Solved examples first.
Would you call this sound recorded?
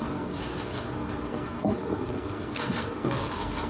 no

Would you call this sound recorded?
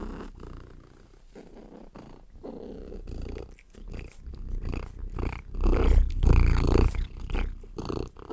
yes